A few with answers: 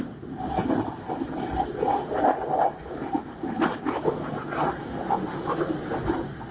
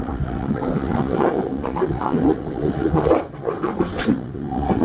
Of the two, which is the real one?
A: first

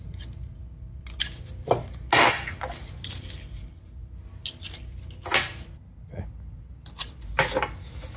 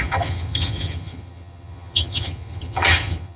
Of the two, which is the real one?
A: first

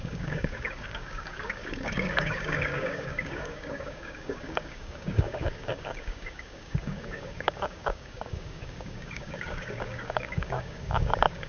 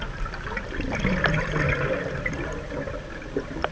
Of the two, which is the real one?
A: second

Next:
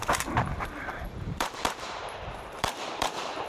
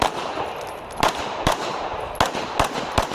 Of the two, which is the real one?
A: second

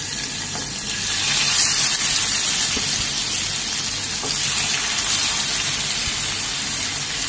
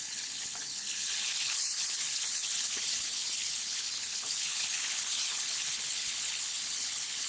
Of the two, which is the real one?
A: first